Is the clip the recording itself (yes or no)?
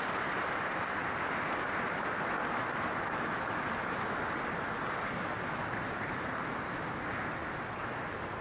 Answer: yes